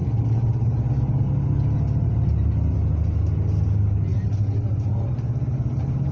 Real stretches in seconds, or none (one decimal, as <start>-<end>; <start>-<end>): 0.0-6.1